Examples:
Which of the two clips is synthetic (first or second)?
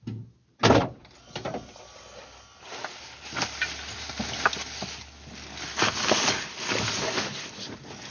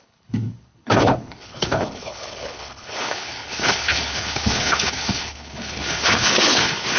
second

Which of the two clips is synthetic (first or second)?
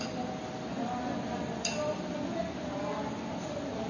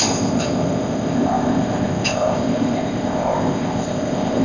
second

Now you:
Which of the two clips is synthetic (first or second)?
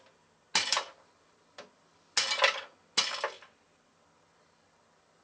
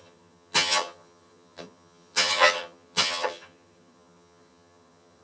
second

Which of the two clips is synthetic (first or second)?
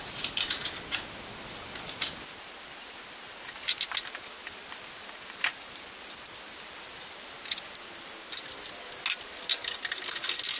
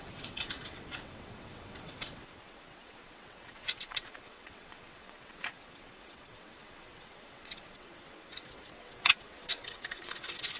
second